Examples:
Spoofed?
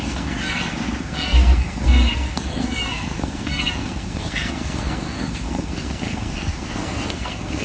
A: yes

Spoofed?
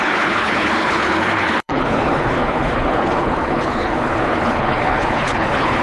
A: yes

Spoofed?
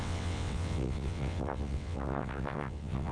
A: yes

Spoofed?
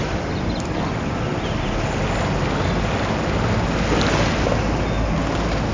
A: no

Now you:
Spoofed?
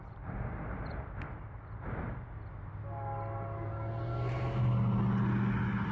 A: no